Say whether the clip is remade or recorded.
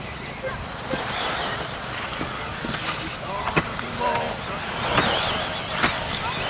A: recorded